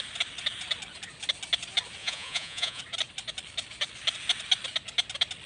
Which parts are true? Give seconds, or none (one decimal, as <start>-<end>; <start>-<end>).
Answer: 0.0-2.0; 2.8-5.5